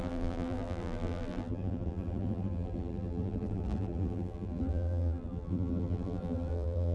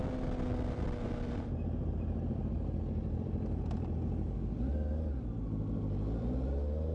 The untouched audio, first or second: second